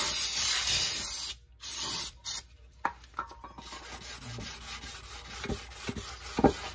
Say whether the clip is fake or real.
real